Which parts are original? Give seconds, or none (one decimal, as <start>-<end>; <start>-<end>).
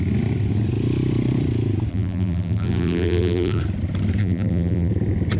0.0-1.9; 3.6-4.2; 4.9-5.4